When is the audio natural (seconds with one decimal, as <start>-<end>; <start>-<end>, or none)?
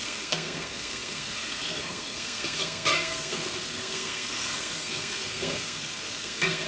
none